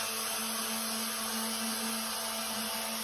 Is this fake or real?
real